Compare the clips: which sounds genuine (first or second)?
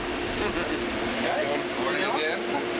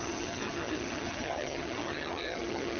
first